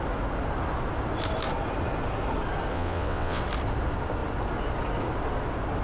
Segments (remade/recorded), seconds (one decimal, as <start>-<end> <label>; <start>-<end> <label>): 0.0-2.7 recorded; 2.7-3.4 remade; 3.4-5.8 recorded